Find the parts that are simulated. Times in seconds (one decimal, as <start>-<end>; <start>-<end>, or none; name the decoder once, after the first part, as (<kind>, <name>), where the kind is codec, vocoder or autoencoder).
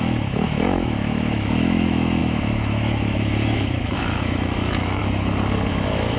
0.0-5.0 (autoencoder, DAC-VAE); 5.7-6.2